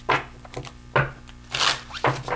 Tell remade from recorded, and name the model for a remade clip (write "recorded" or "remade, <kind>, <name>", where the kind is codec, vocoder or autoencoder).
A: recorded